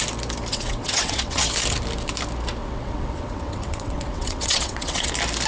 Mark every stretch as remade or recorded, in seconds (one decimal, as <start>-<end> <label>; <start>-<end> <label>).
0.0-0.5 recorded; 0.5-1.4 remade; 1.4-2.6 recorded; 2.6-5.1 remade; 5.1-5.5 recorded